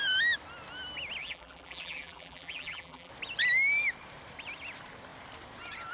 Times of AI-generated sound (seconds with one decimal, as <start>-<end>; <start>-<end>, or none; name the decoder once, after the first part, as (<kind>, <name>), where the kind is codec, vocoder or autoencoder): 1.2-3.1 (vocoder, BigVGAN v2)